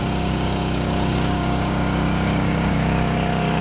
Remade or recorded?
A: remade